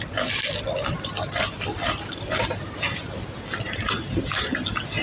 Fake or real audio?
real